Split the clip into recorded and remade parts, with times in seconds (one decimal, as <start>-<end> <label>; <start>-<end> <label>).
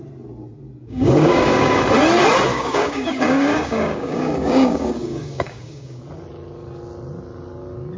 0.0-0.8 recorded; 0.8-1.8 remade; 1.8-2.5 recorded; 2.5-6.0 remade; 6.0-8.0 recorded